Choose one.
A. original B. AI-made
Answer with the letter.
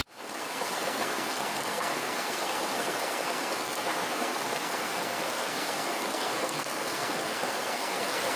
B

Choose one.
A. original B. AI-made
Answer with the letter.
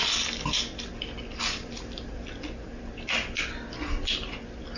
A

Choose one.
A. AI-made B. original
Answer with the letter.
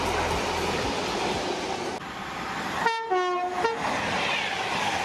B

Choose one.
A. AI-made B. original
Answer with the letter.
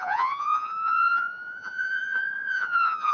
A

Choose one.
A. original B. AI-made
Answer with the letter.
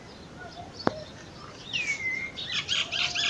A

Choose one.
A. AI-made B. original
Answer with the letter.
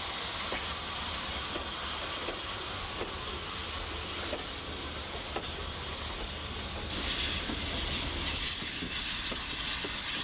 B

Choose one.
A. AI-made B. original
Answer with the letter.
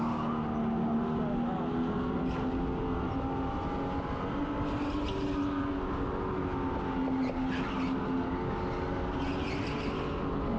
B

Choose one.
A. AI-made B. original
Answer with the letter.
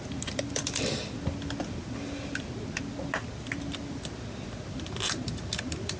B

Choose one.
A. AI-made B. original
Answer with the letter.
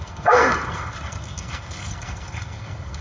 A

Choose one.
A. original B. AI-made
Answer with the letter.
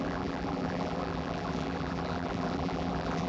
B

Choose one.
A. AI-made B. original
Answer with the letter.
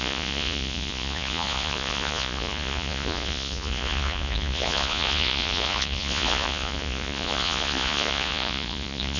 A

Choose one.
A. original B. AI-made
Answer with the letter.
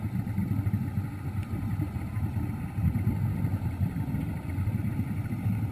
A